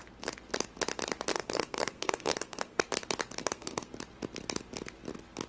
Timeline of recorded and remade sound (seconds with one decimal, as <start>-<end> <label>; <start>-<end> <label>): 0.0-1.3 recorded; 1.3-2.8 remade; 2.8-3.4 recorded; 3.4-3.9 remade; 3.9-5.5 recorded